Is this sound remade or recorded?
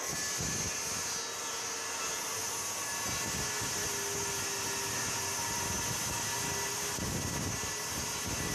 recorded